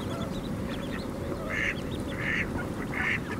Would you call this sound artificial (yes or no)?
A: yes